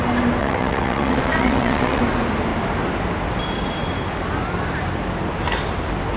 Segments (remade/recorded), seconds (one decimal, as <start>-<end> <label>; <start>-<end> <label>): 0.0-0.4 recorded; 0.4-2.0 remade; 2.0-6.2 recorded

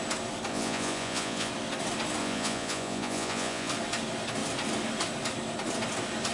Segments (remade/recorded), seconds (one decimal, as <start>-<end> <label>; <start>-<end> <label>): 0.0-0.5 recorded; 0.5-1.5 remade; 1.5-2.2 recorded; 2.2-3.7 remade; 3.7-6.3 recorded

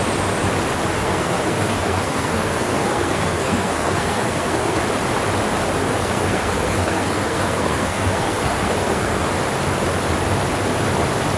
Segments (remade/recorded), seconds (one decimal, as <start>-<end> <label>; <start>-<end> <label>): 0.0-1.0 recorded; 1.0-4.8 remade; 4.8-5.8 recorded; 5.8-9.3 remade; 9.3-11.4 recorded